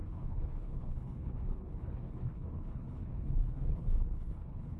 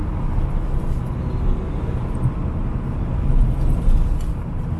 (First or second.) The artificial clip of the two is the first